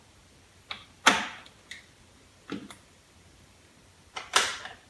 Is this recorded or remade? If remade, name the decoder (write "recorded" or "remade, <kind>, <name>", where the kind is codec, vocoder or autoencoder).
remade, vocoder, BigVGAN v2